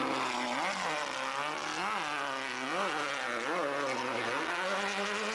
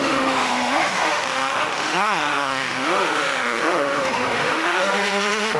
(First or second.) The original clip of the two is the first